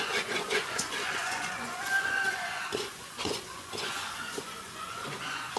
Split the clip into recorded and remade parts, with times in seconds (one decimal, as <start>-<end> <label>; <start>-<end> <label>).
0.0-5.6 remade